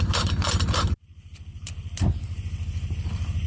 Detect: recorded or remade remade